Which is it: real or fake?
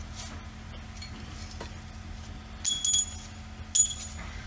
real